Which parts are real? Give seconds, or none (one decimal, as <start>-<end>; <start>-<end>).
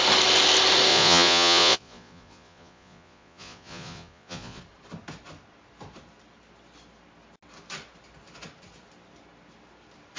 0.0-0.9; 4.6-10.2